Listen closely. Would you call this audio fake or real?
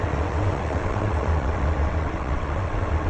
fake